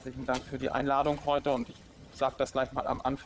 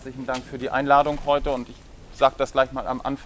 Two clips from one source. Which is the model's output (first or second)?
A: first